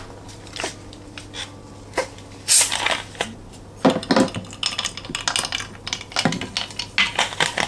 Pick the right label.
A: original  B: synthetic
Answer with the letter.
A